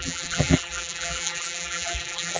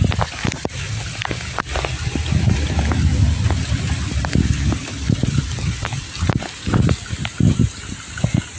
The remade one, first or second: first